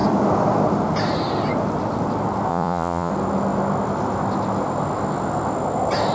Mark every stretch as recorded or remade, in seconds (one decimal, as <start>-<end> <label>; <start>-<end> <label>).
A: 0.0-2.5 recorded; 2.5-3.1 remade; 3.1-6.1 recorded